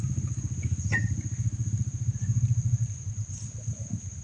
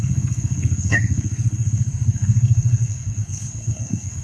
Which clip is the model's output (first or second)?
second